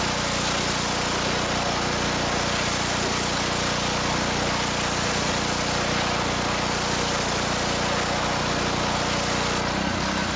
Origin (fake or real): real